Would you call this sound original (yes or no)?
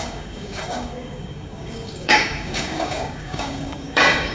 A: no